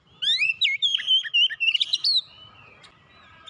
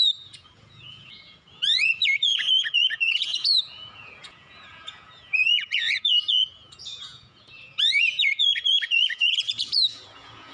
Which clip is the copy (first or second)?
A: second